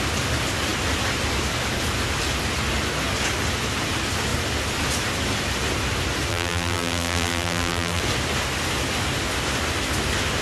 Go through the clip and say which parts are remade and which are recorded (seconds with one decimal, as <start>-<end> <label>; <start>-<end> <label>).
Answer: 0.0-6.3 recorded; 6.3-8.0 remade; 8.0-10.4 recorded